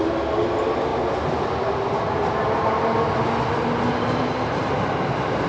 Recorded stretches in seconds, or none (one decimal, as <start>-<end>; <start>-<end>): 0.0-5.5